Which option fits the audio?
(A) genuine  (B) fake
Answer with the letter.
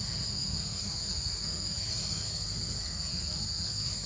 B